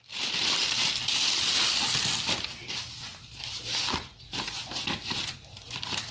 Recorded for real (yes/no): yes